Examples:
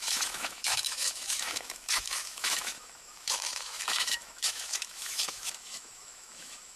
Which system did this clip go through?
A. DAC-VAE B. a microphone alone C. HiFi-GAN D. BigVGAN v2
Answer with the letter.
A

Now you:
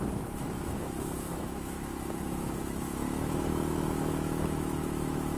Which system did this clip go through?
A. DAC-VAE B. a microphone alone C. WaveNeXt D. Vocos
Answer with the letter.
A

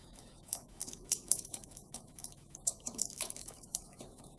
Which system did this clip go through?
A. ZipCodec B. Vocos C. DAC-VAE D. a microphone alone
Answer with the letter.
C